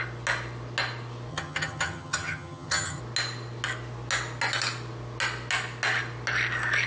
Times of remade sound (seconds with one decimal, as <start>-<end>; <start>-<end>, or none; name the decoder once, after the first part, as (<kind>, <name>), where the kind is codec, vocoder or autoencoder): 1.3-3.0 (vocoder, HiFi-GAN)